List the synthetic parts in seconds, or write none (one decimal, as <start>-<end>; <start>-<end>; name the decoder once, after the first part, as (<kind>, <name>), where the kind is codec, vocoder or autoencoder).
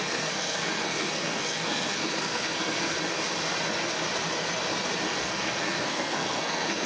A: 0.0-3.0 (codec, SNAC); 5.2-6.9